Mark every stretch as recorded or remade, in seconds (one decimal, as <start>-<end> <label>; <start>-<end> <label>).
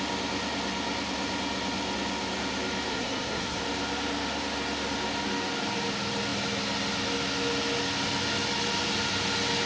0.0-2.9 recorded; 2.9-3.6 remade; 3.6-9.7 recorded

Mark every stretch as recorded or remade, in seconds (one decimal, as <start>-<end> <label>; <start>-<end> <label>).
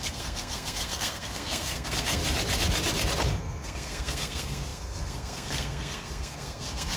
0.0-2.2 remade; 2.2-3.4 recorded; 3.4-7.0 remade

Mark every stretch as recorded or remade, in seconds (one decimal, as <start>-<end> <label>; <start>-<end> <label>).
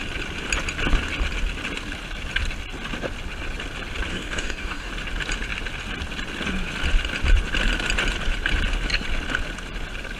0.0-4.1 recorded; 4.1-4.9 remade; 4.9-10.2 recorded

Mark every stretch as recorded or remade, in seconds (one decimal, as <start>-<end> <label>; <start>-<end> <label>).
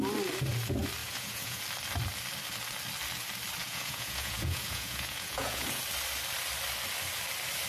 0.0-1.0 recorded; 1.0-1.6 remade; 1.6-3.6 recorded; 3.6-5.8 remade; 5.8-7.7 recorded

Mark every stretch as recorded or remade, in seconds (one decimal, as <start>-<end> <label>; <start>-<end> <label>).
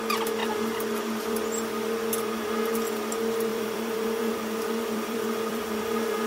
0.0-0.4 recorded; 0.4-1.4 remade; 1.4-3.5 recorded; 3.5-6.3 remade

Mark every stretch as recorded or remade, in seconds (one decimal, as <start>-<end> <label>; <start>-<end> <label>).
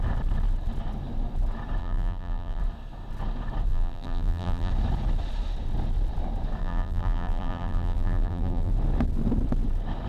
0.0-1.8 recorded; 1.8-2.6 remade; 2.6-3.7 recorded; 3.7-4.7 remade; 4.7-6.6 recorded; 6.6-8.7 remade; 8.7-10.1 recorded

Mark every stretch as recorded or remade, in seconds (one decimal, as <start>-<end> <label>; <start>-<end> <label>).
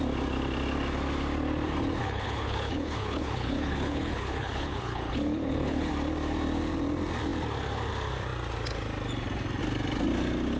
0.0-2.0 recorded; 2.0-5.9 remade; 5.9-10.6 recorded